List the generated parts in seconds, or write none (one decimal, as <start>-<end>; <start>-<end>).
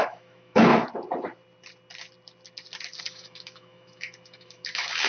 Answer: 0.0-0.7; 3.0-5.1